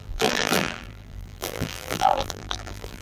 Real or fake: fake